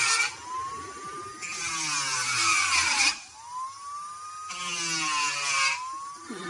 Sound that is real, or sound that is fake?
real